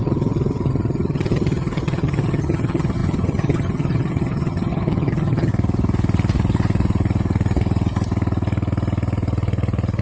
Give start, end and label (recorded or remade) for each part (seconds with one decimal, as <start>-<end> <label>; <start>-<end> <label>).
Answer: 0.0-5.5 remade; 5.5-10.0 recorded